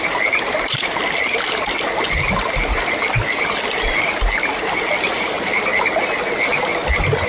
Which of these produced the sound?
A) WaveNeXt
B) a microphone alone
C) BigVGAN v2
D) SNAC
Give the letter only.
B